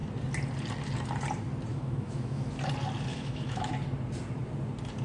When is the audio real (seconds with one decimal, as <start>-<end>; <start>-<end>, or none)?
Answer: 0.0-1.7; 2.5-3.1; 3.7-5.0